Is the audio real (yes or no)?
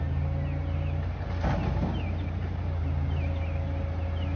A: yes